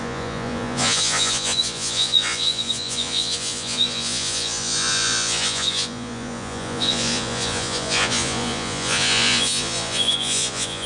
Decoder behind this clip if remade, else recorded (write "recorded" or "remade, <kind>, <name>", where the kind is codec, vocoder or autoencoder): remade, vocoder, Vocos